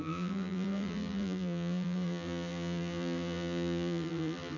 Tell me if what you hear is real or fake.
fake